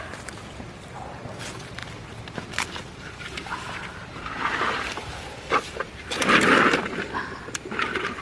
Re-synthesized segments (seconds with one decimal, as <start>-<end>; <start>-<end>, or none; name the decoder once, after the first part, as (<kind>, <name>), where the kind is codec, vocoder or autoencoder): 1.8-5.6 (vocoder, BigVGAN v2)